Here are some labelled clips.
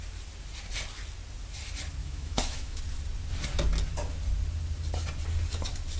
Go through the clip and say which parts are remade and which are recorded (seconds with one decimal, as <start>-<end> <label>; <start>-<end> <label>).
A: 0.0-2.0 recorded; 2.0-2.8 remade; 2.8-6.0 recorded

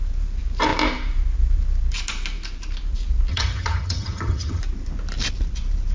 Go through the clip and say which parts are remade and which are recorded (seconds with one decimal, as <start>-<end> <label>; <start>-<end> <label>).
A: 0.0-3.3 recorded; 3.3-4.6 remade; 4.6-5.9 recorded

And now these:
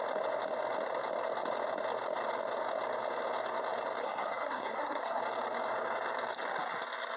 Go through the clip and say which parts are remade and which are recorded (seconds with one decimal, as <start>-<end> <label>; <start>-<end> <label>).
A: 0.0-4.0 recorded; 4.0-5.2 remade; 5.2-7.2 recorded